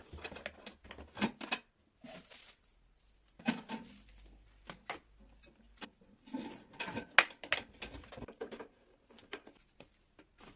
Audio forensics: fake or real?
real